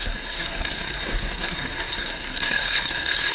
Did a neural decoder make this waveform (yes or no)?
yes